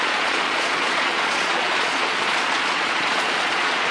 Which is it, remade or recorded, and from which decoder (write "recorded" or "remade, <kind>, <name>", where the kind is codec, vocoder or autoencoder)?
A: remade, vocoder, Vocos